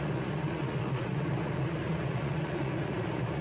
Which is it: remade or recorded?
remade